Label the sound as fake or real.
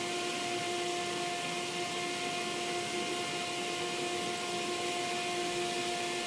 real